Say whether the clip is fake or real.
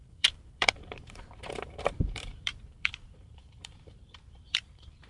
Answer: fake